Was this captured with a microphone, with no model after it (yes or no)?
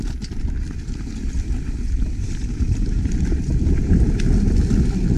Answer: yes